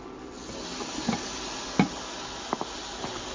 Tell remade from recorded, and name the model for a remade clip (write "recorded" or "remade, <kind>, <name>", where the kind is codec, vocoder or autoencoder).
recorded